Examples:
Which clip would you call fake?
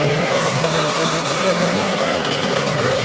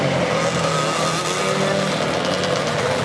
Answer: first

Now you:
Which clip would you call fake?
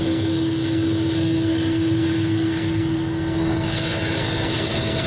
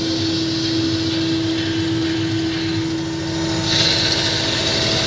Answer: first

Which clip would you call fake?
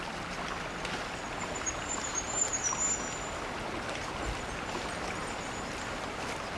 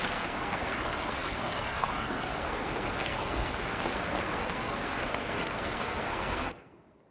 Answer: second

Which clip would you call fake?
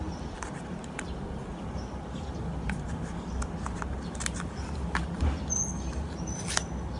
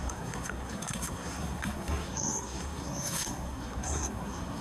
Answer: second